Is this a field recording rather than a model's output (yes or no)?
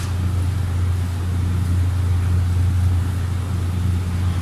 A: yes